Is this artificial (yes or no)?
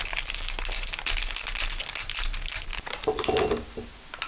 no